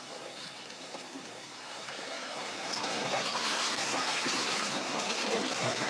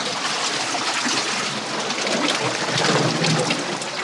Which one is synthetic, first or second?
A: first